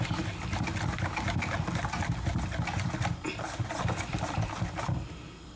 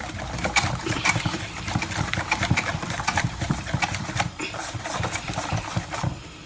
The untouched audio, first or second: first